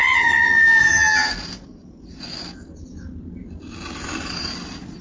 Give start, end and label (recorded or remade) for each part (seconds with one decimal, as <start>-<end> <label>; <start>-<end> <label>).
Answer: 0.0-1.3 remade; 1.3-5.0 recorded